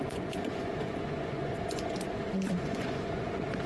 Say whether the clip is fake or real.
fake